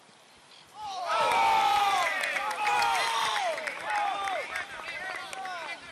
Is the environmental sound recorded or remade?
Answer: remade